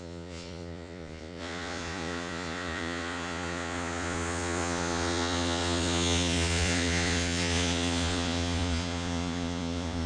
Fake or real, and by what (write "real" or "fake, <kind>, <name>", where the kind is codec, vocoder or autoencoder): fake, vocoder, Vocos